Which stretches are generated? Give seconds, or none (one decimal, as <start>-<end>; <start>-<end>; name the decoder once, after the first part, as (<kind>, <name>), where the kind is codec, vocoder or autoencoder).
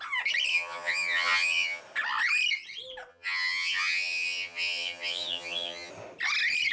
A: 0.5-1.8 (vocoder, HiFi-GAN); 3.1-5.9